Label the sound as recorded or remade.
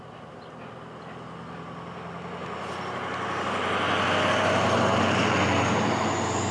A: recorded